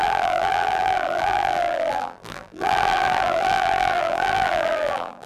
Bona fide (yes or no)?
no